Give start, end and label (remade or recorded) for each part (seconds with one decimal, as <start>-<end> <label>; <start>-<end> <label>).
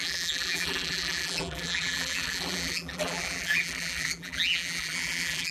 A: 0.0-5.5 remade